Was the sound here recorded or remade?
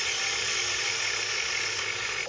recorded